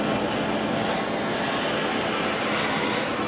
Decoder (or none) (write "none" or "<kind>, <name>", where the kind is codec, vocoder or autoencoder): none